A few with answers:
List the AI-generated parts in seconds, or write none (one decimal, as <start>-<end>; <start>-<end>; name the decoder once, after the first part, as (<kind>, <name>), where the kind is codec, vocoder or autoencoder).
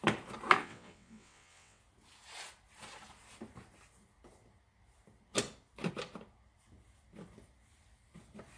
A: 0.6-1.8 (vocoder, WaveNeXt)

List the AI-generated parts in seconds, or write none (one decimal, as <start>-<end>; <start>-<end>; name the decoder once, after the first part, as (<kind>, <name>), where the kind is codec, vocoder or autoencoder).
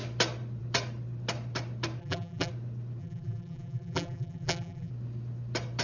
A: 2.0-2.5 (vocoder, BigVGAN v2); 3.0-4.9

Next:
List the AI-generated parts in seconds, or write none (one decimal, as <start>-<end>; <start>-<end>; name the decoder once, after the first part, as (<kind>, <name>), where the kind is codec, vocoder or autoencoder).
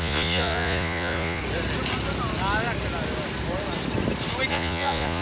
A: 0.0-1.4 (vocoder, Vocos); 4.5-5.2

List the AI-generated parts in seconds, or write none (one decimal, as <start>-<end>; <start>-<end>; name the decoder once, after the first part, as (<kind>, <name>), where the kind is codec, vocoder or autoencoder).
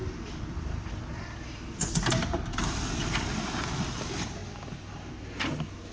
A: 0.0-3.5 (vocoder, BigVGAN v2)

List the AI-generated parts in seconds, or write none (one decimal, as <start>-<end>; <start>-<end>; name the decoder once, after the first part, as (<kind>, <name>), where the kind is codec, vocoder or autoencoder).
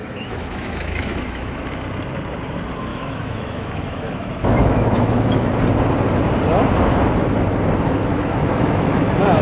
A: 0.0-1.6 (autoencoder, DAC-VAE); 2.9-5.5; 8.1-9.0